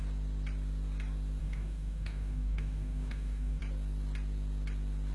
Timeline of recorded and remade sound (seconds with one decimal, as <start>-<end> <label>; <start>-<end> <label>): 0.0-1.4 recorded; 1.4-3.6 remade; 3.6-5.1 recorded